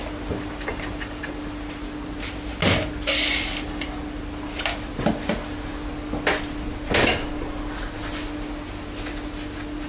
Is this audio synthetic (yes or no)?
no